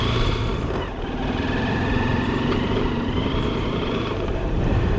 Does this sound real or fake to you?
fake